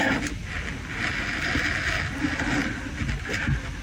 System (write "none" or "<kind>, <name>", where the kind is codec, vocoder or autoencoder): none